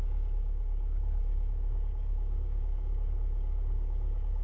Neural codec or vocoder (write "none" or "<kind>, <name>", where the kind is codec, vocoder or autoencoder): codec, DAC